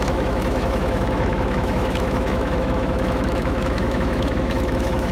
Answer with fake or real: fake